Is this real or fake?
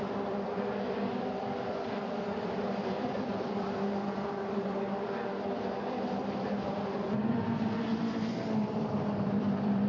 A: fake